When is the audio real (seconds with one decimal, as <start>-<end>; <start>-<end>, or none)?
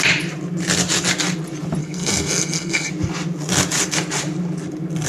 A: 0.0-1.8; 2.9-5.1